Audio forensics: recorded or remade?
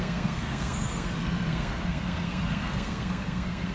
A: remade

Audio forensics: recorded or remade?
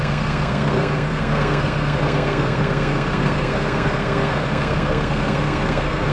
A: remade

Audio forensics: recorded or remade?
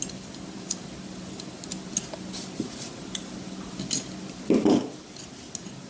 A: recorded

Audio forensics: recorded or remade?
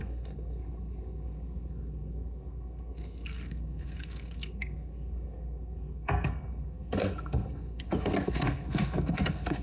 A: remade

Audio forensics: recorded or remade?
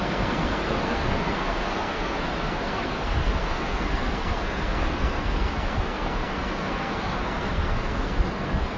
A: remade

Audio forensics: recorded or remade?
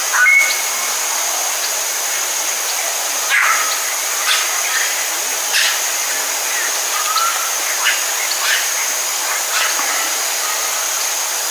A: recorded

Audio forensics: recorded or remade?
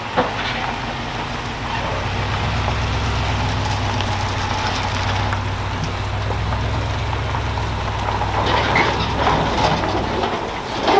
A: recorded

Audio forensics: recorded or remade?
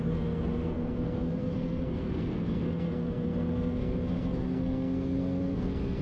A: remade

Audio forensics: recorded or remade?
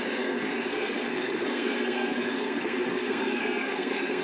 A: remade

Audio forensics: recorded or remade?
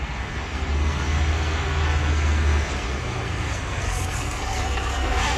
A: remade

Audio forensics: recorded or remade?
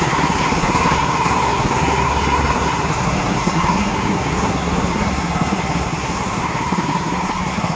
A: remade